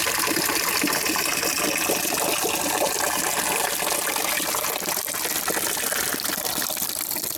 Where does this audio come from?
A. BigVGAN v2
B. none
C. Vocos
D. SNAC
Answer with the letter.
B